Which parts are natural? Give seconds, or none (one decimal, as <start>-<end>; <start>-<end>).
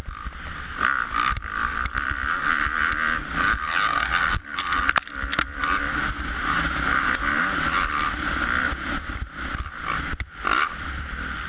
0.0-11.5